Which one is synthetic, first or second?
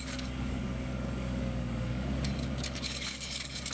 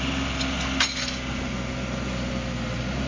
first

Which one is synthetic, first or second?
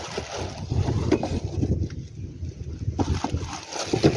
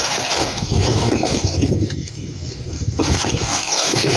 second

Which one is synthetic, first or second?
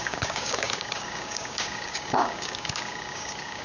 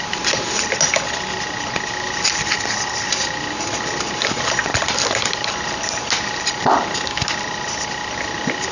first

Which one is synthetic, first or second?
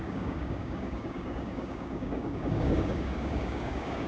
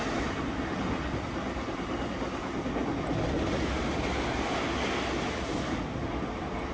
first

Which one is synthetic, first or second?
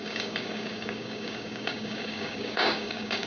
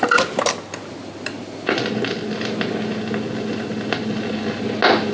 first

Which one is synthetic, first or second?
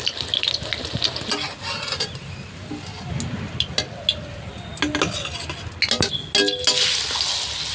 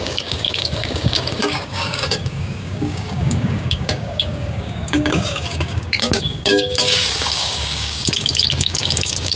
second